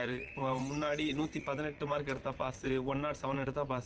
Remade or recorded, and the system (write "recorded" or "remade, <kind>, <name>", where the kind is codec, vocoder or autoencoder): remade, vocoder, WaveNeXt